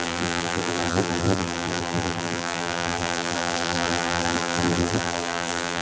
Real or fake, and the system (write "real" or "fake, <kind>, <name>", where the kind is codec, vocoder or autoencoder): fake, vocoder, BigVGAN v2